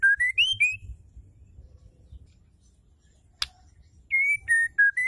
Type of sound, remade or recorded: recorded